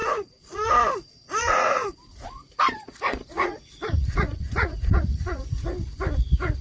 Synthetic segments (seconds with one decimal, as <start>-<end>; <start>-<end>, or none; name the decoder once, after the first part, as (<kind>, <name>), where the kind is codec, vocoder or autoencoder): 0.0-0.7 (vocoder, Vocos); 1.4-5.4